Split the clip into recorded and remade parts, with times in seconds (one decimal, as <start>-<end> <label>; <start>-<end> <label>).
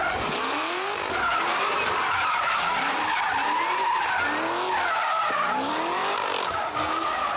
0.0-7.4 recorded